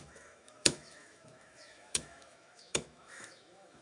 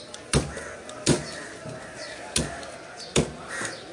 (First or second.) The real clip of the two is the second